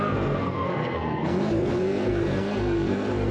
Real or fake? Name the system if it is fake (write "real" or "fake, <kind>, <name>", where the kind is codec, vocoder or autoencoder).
fake, codec, SNAC